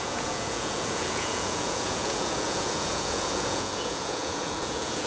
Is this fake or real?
fake